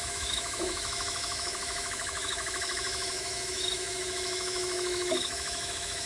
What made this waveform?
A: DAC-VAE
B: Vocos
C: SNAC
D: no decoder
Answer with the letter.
A